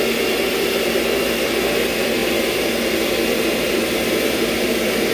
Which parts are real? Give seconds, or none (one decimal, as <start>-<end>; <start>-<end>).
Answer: 0.0-5.1